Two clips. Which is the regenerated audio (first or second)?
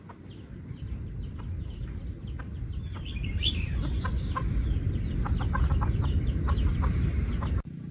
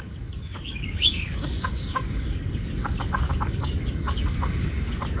second